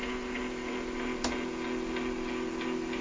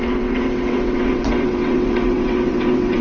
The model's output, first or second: second